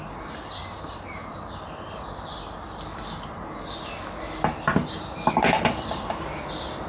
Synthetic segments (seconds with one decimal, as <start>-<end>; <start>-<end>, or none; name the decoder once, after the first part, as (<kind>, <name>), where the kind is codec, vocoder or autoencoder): 0.6-1.2 (vocoder, BigVGAN v2); 5.3-6.9